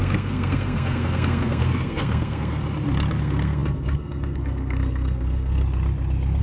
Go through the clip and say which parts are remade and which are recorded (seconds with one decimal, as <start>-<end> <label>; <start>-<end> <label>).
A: 0.0-2.6 remade; 2.6-3.2 recorded; 3.2-5.6 remade; 5.6-6.4 recorded